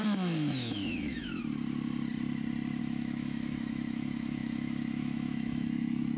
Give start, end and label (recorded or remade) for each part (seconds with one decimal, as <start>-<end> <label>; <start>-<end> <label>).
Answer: 0.0-1.4 remade; 1.4-2.8 recorded; 2.8-6.2 remade